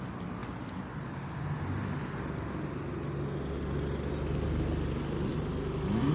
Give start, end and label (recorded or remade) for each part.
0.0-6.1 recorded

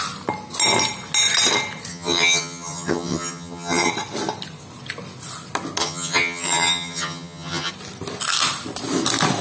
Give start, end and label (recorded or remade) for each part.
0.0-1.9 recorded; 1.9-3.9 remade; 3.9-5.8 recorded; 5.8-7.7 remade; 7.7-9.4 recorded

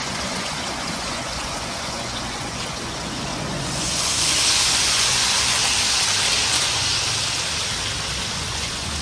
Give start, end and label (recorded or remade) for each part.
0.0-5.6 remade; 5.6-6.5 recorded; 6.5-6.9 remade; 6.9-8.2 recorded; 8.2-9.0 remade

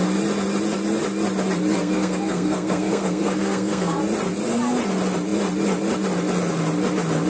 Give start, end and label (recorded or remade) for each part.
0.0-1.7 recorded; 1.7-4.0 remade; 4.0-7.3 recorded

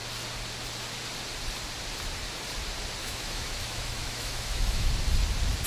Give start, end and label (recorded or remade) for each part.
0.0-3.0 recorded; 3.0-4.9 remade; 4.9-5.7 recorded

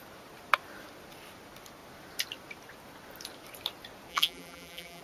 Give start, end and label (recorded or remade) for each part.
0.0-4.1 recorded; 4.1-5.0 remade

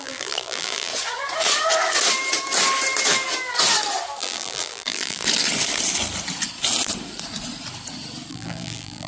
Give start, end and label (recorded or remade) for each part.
0.0-0.9 remade; 0.9-4.2 recorded; 4.2-5.2 remade; 5.2-8.3 recorded; 8.3-9.1 remade

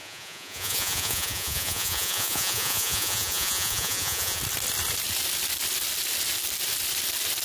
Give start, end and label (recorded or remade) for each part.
0.0-4.4 remade; 4.4-7.4 recorded